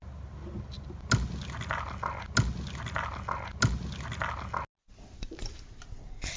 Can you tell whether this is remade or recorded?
recorded